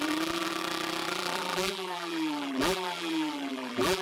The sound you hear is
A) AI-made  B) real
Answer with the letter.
A